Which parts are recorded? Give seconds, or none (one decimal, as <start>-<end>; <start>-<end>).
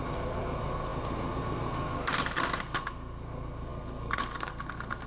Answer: 2.0-2.6